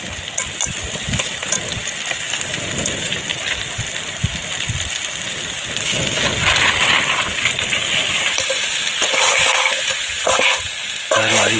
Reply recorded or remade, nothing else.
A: recorded